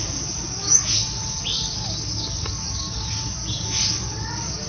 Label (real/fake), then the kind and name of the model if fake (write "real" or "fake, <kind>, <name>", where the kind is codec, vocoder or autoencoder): fake, codec, DAC